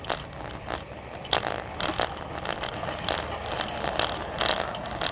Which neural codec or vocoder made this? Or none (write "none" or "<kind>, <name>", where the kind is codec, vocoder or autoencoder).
none